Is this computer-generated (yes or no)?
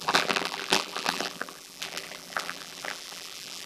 yes